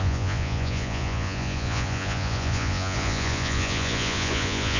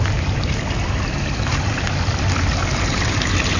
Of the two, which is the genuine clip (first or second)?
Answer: second